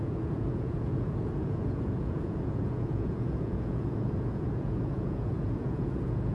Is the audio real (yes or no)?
no